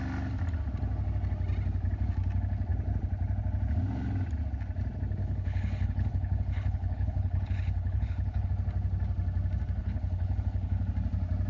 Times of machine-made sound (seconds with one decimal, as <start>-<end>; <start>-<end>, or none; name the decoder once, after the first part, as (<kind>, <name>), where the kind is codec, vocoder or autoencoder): 5.2-8.5 (codec, HILCodec); 9.8-10.8